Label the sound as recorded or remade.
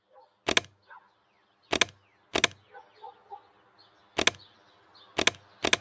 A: recorded